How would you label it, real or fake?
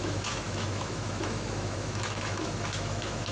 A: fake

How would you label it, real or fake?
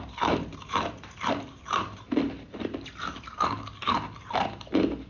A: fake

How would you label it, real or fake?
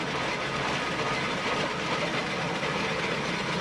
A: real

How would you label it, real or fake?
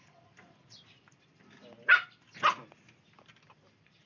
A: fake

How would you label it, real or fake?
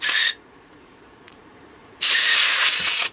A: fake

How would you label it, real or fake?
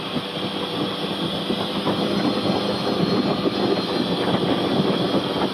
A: real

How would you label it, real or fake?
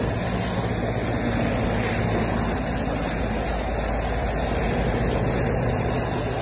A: real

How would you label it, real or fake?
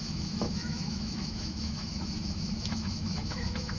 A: fake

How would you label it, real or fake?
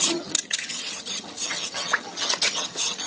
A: fake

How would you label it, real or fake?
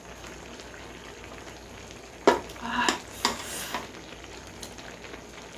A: real